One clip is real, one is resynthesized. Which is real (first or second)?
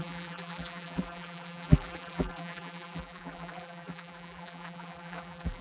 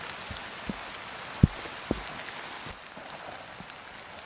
second